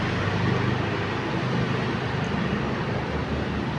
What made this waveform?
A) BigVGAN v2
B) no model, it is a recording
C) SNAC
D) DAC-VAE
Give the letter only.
B